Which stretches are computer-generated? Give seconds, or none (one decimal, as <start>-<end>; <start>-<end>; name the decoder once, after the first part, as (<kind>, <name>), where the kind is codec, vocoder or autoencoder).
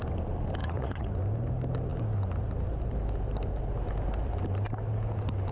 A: 0.6-1.1 (vocoder, Vocos)